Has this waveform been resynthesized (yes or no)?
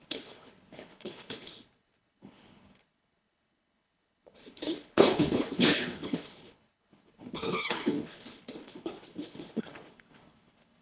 yes